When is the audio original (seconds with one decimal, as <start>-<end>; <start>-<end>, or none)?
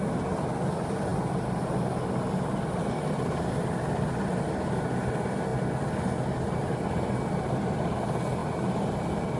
0.0-9.4